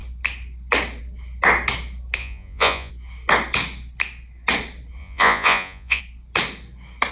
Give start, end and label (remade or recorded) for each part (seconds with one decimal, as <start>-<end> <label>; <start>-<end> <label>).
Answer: 0.0-2.2 recorded; 2.2-2.9 remade; 2.9-5.0 recorded; 5.0-6.0 remade; 6.0-7.1 recorded